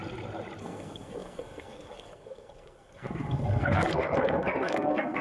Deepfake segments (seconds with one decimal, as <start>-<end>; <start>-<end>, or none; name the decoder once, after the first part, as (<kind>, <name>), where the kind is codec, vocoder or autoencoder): 0.6-5.2 (codec, SNAC)